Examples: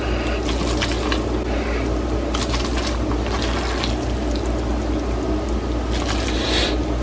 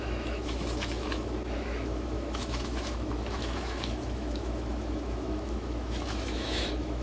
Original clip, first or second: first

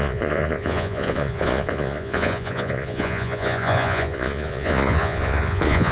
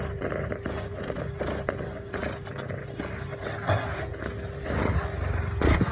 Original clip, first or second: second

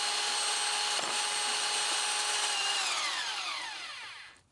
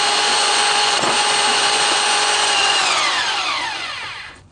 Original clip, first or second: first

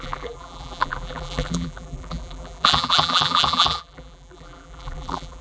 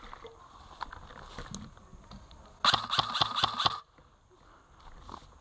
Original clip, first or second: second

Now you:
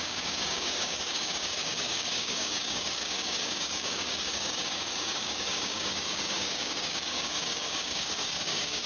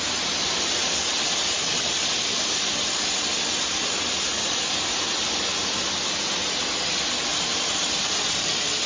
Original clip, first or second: second